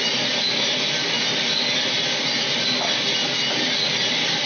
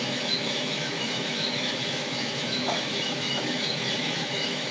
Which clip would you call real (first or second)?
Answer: first